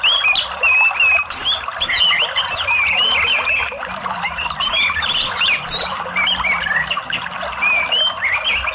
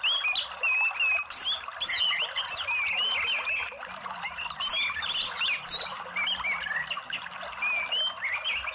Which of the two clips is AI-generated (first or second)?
first